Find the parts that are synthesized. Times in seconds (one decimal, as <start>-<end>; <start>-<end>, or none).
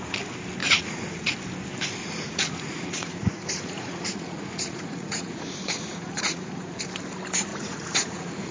0.6-1.3; 2.0-6.8; 7.5-8.5